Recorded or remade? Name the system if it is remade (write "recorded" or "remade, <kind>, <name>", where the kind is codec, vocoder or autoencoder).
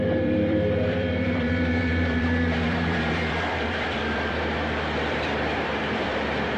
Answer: remade, vocoder, BigVGAN v2